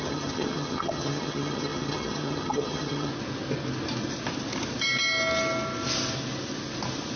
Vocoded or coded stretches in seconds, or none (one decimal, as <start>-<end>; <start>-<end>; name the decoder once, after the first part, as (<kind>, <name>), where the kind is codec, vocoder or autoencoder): 0.0-3.1 (vocoder, HiFi-GAN)